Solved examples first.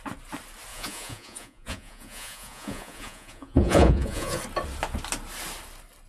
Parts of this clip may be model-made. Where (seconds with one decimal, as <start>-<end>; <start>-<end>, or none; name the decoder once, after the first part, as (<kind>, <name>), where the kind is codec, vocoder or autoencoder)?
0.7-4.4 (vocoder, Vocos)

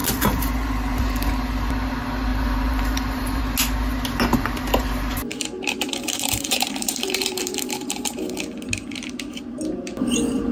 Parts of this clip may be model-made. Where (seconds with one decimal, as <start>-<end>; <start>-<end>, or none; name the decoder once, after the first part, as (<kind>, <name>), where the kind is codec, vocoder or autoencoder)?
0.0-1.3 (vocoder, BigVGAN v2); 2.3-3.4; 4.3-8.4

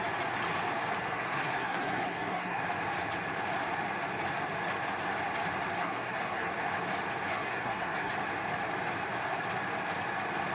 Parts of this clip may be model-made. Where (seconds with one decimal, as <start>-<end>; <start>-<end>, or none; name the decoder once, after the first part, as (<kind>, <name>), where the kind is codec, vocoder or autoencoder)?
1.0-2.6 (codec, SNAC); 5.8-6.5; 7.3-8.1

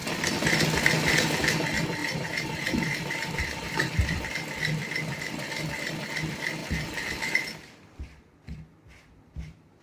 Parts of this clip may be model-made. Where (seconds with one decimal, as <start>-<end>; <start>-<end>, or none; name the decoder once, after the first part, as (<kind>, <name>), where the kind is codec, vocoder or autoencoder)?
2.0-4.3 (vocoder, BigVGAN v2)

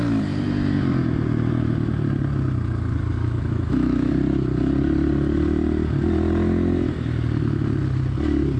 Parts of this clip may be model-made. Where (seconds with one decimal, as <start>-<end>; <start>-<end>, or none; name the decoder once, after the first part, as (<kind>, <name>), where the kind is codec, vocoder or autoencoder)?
3.2-4.1 (autoencoder, DAC-VAE)

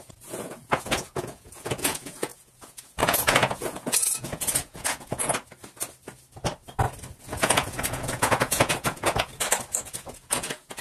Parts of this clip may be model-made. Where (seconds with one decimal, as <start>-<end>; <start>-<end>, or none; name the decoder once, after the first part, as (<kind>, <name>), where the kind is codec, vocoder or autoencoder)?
0.0-5.3 (vocoder, Vocos); 7.2-9.3; 9.8-10.8

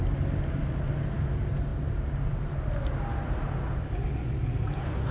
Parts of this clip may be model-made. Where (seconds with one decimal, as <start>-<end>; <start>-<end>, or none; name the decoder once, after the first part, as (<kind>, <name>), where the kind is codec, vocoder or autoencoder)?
none